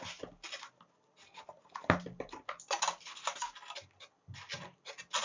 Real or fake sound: real